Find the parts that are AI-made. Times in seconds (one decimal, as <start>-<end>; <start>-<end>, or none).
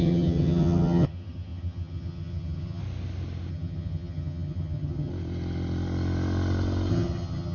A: 0.0-2.8; 3.5-5.1; 6.9-7.5